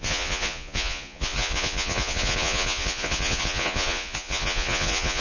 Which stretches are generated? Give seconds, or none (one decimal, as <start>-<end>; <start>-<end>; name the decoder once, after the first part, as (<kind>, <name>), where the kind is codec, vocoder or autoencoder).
0.0-5.2 (vocoder, Vocos)